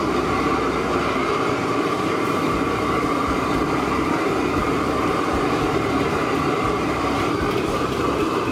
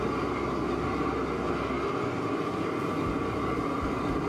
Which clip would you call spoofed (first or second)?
first